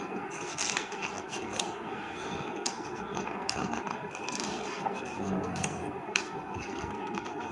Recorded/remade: remade